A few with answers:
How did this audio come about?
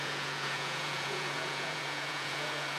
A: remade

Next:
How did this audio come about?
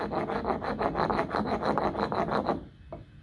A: recorded